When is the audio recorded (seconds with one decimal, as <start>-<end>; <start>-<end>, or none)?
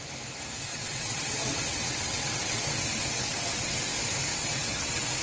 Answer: 0.0-0.7; 3.8-4.3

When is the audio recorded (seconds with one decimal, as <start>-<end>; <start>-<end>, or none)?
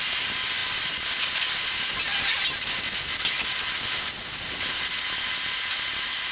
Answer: 0.0-6.3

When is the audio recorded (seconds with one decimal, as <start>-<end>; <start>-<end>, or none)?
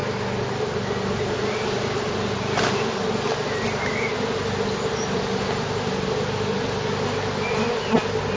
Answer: 0.0-8.4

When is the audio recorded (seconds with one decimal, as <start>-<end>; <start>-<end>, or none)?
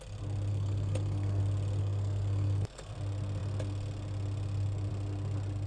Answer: 0.0-0.5; 1.4-1.8; 2.9-5.7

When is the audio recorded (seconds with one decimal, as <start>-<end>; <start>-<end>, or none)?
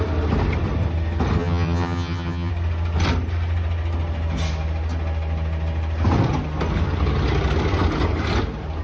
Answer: 0.0-1.4; 2.5-8.8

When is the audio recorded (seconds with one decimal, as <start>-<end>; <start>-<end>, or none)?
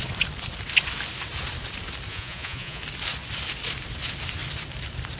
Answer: 0.0-2.1; 2.8-5.2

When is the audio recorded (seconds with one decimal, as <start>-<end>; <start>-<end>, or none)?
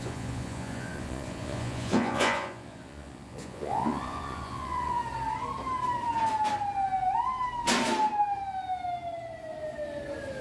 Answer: 5.0-10.4